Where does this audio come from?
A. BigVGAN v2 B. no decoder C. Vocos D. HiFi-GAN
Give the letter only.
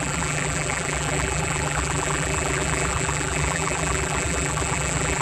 A